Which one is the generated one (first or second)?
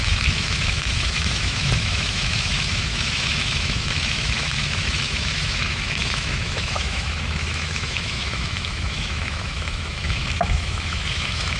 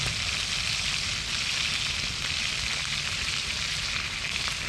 first